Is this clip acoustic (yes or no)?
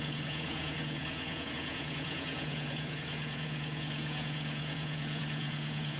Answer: no